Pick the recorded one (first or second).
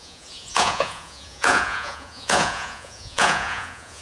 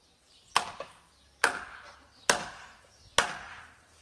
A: second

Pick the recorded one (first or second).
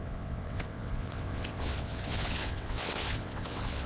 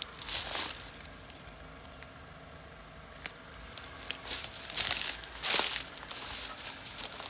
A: second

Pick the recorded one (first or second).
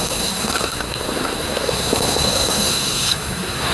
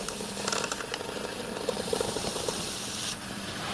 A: second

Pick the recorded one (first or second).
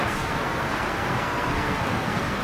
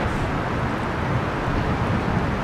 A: second